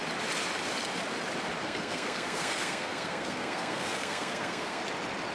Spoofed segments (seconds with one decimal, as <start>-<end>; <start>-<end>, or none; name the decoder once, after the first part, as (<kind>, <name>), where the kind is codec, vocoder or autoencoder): 1.6-4.8 (codec, SNAC)